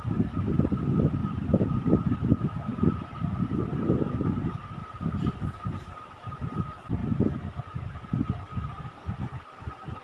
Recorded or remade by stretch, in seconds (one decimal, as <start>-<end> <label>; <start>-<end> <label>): 0.0-1.2 recorded; 1.2-1.9 remade; 1.9-2.7 recorded; 2.7-4.1 remade; 4.1-10.0 recorded